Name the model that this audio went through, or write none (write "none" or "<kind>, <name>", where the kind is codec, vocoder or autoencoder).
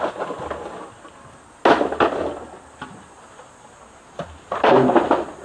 none